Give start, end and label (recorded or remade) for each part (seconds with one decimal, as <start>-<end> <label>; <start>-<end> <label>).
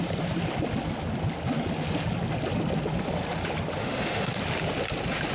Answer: 0.0-3.8 recorded; 3.8-4.3 remade; 4.3-5.3 recorded